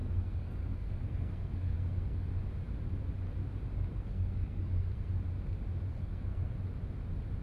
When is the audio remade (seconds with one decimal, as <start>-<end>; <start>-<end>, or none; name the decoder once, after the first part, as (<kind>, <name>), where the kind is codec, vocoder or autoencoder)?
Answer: 0.0-2.3 (codec, SNAC); 3.9-5.1; 5.9-6.6